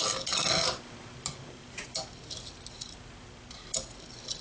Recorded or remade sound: recorded